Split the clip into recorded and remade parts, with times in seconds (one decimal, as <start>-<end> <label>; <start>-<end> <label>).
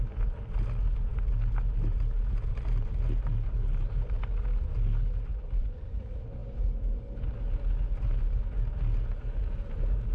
0.0-5.3 recorded; 5.3-6.0 remade; 6.0-10.1 recorded